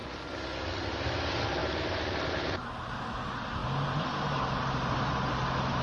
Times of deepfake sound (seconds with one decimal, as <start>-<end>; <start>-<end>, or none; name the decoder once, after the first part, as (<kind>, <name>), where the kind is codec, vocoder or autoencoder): none